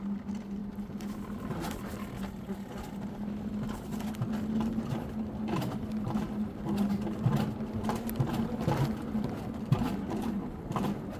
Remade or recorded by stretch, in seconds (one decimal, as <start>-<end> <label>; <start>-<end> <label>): 0.0-11.2 recorded